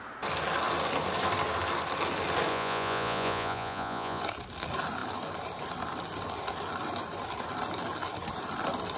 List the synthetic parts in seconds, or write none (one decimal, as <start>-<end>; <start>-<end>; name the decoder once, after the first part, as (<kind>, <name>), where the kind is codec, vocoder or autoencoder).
2.5-4.2 (vocoder, Vocos)